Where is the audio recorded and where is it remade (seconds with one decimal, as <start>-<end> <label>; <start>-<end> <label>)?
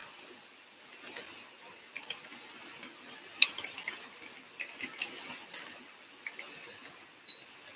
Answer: 0.0-7.8 recorded